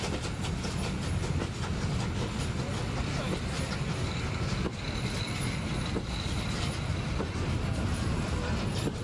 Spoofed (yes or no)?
no